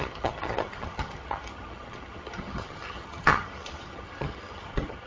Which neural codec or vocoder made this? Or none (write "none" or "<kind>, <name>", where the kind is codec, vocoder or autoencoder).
vocoder, HiFi-GAN